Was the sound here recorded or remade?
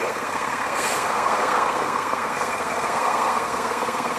remade